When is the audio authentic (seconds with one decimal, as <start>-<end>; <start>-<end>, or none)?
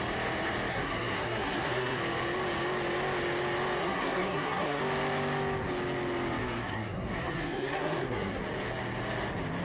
0.0-0.7; 2.0-3.8; 4.8-6.4; 8.4-9.6